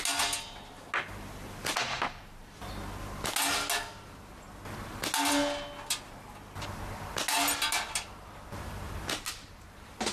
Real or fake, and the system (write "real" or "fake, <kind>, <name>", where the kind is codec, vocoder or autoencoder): real